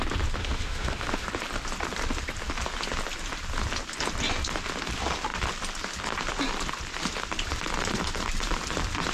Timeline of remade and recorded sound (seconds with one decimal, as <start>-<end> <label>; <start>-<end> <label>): 0.0-0.4 recorded; 0.4-1.3 remade; 1.3-9.1 recorded